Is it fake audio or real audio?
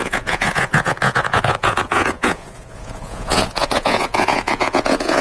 fake